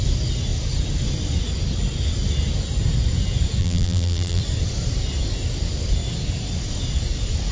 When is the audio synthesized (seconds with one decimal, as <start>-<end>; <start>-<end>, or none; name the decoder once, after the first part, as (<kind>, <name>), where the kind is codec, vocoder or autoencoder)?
3.6-4.4 (vocoder, BigVGAN v2)